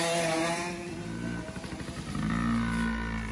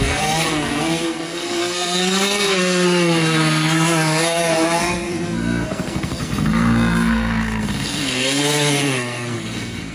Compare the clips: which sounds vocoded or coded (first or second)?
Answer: second